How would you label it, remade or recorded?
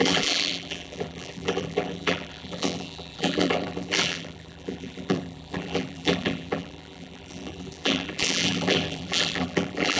remade